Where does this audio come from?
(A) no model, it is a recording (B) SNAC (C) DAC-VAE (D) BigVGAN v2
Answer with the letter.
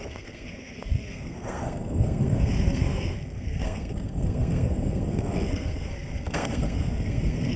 B